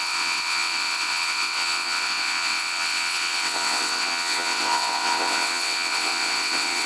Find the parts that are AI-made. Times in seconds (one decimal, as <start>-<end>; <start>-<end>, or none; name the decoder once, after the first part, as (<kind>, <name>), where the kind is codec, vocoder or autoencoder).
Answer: 0.0-6.9 (vocoder, WaveNeXt)